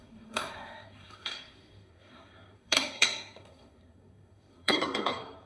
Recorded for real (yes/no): no